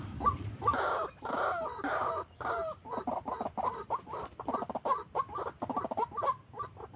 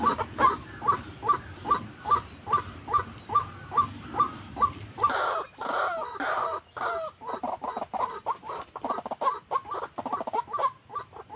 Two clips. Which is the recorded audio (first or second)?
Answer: second